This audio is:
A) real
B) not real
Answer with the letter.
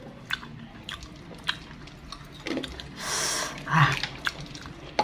A